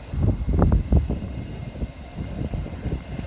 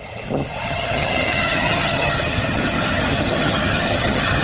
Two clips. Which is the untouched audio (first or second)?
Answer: first